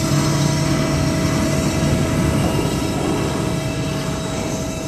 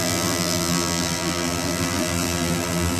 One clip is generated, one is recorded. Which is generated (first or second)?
second